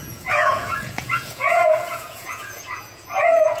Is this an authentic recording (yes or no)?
no